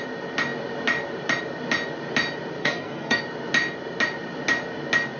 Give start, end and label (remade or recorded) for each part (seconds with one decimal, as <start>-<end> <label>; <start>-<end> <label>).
0.0-2.6 recorded; 2.6-3.2 remade; 3.2-5.2 recorded